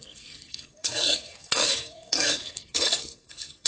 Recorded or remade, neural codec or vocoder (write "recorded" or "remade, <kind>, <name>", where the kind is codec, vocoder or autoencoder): remade, codec, SNAC